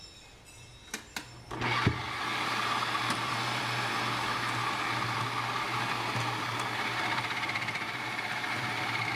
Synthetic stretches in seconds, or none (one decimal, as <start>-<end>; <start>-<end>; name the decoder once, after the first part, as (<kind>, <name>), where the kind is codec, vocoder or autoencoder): 2.3-3.9 (vocoder, BigVGAN v2)